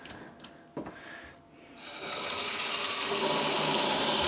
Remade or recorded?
recorded